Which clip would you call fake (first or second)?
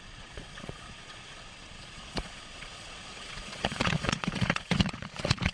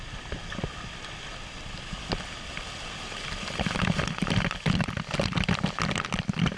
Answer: first